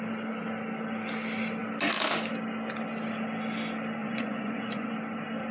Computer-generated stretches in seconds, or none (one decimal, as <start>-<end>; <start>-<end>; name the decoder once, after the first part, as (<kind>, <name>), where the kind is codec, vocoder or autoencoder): 4.0-4.9 (vocoder, Vocos)